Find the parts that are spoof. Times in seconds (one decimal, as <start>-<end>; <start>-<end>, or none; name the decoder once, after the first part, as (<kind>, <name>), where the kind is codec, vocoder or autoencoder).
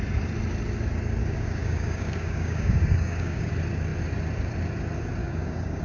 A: 1.2-3.5 (codec, DAC); 5.2-5.8